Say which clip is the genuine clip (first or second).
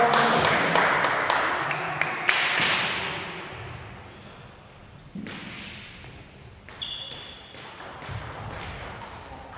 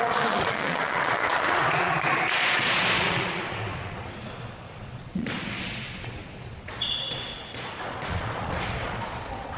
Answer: first